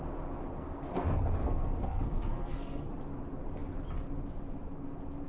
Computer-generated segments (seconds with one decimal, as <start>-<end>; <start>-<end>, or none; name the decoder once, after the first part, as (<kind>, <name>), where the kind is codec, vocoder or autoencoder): 0.5-2.9 (codec, SNAC)